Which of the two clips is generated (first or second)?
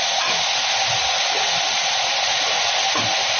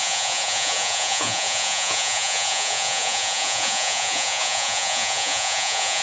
second